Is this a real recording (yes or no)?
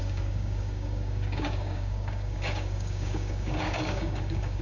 no